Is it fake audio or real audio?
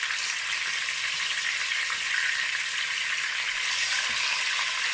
real